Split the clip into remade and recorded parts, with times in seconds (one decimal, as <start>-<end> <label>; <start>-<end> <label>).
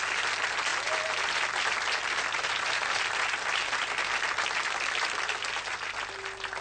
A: 0.0-6.6 recorded